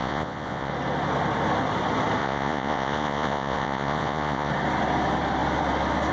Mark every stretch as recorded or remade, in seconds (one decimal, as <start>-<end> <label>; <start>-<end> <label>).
0.0-0.7 remade; 0.7-2.2 recorded; 2.2-4.5 remade; 4.5-6.1 recorded